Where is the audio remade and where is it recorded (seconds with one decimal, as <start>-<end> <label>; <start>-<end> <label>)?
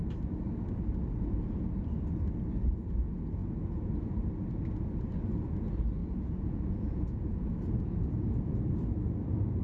0.0-6.0 recorded; 6.0-8.6 remade; 8.6-9.6 recorded